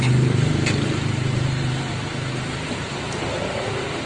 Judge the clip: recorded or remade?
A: remade